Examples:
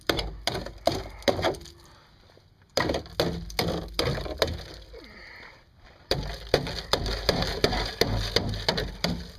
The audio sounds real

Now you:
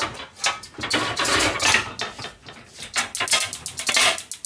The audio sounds real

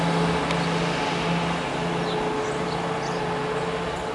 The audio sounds real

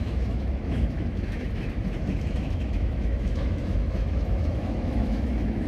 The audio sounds fake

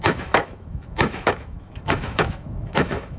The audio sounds fake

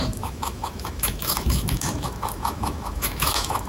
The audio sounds fake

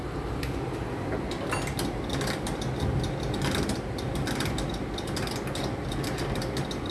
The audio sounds real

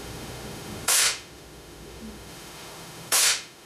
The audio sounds fake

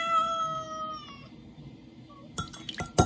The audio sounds real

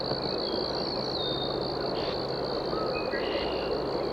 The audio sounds real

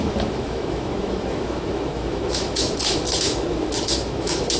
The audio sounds fake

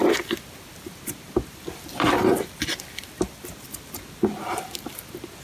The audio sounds real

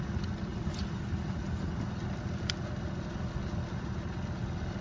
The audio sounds real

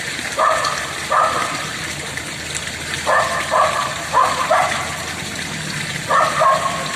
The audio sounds real